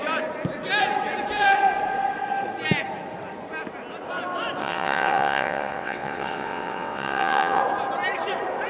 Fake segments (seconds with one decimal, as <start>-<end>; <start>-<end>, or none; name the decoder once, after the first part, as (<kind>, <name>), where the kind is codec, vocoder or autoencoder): 4.6-7.6 (vocoder, WaveNeXt)